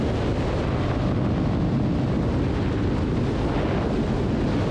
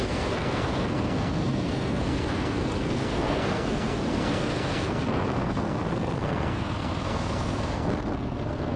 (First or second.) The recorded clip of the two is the first